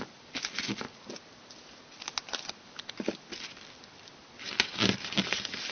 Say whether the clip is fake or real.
real